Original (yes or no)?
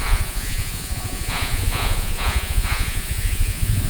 no